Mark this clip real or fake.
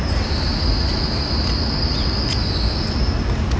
real